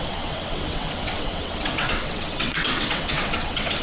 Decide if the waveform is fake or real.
fake